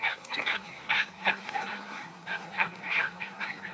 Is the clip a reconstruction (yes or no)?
yes